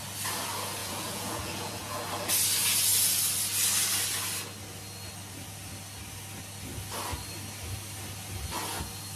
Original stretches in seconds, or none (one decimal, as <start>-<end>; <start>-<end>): 0.0-0.8; 2.0-9.2